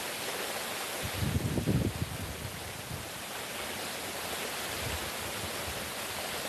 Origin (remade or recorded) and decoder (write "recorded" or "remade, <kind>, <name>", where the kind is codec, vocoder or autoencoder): recorded